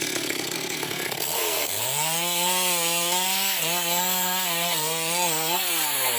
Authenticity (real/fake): fake